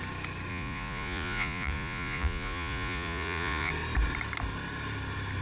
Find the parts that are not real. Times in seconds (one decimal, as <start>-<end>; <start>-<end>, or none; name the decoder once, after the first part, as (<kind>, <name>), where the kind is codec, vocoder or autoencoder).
0.5-3.7 (vocoder, Vocos)